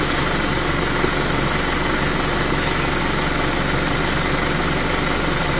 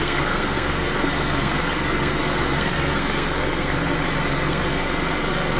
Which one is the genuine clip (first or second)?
first